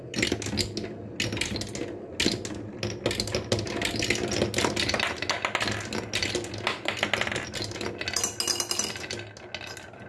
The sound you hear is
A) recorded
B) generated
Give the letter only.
A